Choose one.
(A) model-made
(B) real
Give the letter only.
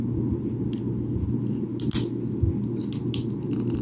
B